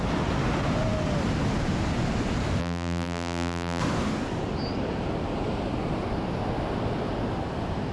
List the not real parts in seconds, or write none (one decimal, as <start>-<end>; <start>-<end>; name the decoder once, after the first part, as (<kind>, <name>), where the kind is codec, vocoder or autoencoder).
2.6-3.8 (vocoder, BigVGAN v2)